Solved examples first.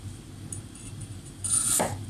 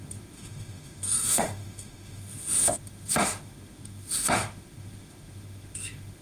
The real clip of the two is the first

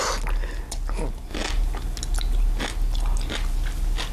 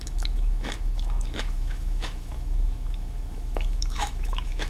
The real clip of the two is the first